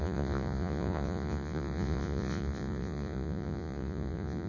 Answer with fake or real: fake